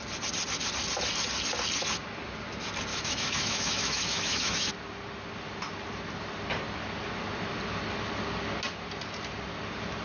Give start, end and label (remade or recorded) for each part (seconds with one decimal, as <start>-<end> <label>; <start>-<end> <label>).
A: 0.0-2.9 recorded; 2.9-4.7 remade; 4.7-10.0 recorded